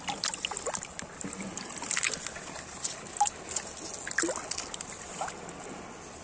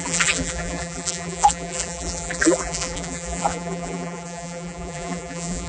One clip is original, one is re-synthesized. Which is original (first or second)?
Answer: first